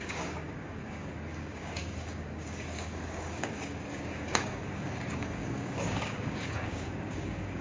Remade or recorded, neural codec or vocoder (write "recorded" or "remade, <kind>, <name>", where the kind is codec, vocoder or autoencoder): remade, codec, DAC